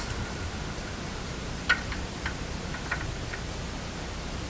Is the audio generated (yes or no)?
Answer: no